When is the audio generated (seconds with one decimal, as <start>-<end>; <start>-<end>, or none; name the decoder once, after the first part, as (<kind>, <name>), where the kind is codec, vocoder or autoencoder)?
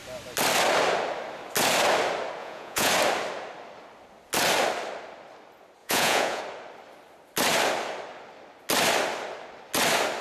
2.4-2.9 (vocoder, Vocos); 5.8-6.4